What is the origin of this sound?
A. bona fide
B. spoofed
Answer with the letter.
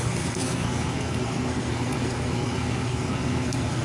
B